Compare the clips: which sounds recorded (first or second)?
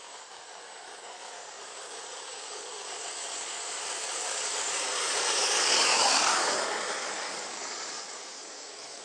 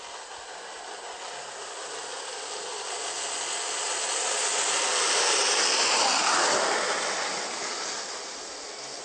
second